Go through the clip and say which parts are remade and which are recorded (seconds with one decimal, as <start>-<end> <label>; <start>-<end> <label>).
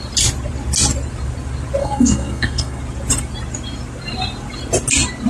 0.0-1.8 recorded; 1.8-2.8 remade; 2.8-5.3 recorded